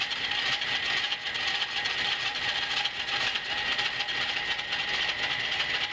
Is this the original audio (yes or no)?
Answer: yes